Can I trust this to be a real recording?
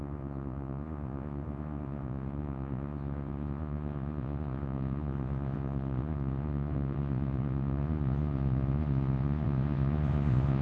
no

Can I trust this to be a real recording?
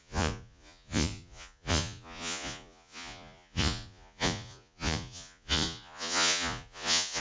no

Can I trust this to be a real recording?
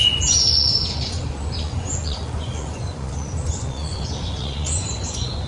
no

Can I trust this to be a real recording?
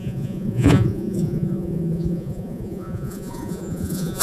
no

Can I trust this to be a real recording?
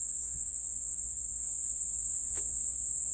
no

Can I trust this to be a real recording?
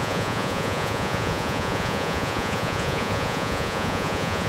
no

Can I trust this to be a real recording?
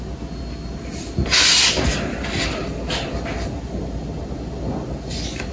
yes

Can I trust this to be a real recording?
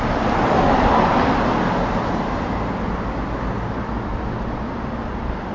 yes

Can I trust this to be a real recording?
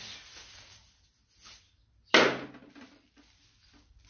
yes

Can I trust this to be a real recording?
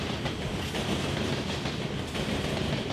yes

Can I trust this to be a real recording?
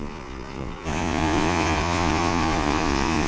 no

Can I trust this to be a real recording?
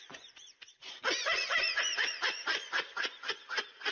no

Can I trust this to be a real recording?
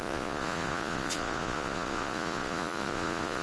no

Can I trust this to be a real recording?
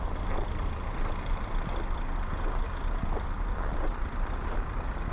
yes